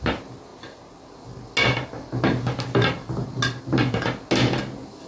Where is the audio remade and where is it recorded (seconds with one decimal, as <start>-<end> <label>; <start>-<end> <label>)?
0.0-5.1 recorded